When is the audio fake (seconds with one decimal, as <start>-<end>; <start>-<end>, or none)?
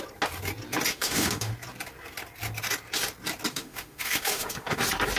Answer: 0.9-1.5; 3.5-4.8